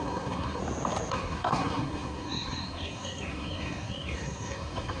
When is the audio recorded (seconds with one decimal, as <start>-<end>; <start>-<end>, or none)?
0.6-1.1